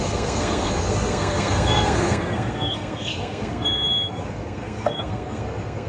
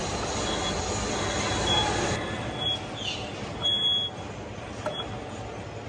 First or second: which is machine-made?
first